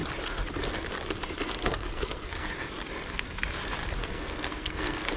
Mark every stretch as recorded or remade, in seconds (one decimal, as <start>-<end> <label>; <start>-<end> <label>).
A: 0.0-1.6 recorded; 1.6-2.7 remade; 2.7-4.0 recorded; 4.0-5.2 remade